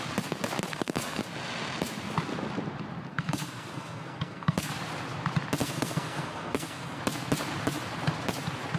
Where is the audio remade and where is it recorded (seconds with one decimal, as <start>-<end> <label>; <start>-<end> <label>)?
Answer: 0.0-0.7 recorded; 0.7-1.2 remade; 1.2-3.1 recorded; 3.1-4.7 remade; 4.7-5.6 recorded; 5.6-7.0 remade; 7.0-8.8 recorded

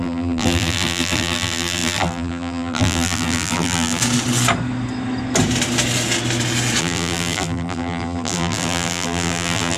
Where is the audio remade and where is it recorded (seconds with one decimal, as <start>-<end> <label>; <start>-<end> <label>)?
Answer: 0.0-4.0 remade; 4.0-6.8 recorded; 6.8-9.8 remade

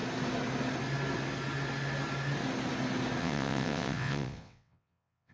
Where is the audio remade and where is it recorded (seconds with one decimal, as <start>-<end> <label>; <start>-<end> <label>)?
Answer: 0.0-3.2 recorded; 3.2-5.3 remade

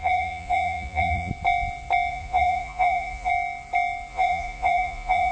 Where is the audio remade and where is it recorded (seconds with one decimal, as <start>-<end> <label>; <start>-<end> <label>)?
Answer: 0.0-1.3 remade; 1.3-2.1 recorded; 2.1-3.3 remade; 3.3-4.1 recorded; 4.1-5.3 remade